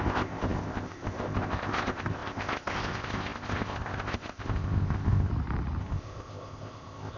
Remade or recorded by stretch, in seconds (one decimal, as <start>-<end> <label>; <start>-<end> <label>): 0.0-5.3 remade; 5.3-5.8 recorded; 5.8-7.2 remade

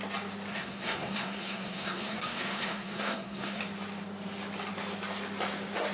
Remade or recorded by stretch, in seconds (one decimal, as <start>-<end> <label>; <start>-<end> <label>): 0.0-0.5 recorded; 0.5-3.6 remade; 3.6-5.9 recorded

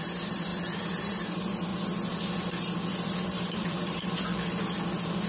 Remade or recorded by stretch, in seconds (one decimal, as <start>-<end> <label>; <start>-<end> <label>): 0.0-1.7 remade; 1.7-3.2 recorded; 3.2-4.3 remade; 4.3-5.3 recorded

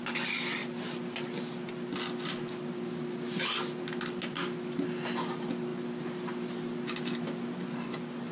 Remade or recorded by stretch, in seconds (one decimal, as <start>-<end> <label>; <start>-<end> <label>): 0.0-8.3 recorded

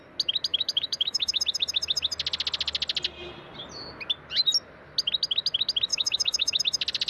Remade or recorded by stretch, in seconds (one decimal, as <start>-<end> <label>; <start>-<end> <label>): 0.0-0.5 recorded; 0.5-1.4 remade; 1.4-5.9 recorded; 5.9-6.6 remade; 6.6-7.1 recorded